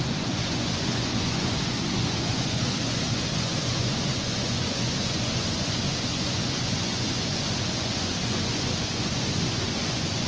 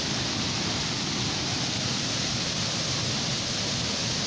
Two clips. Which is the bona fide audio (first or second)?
second